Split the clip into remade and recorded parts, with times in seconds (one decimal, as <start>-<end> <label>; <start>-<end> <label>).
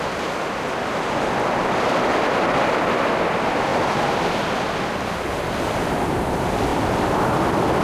0.0-7.8 recorded